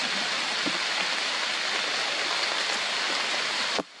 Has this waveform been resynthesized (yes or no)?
no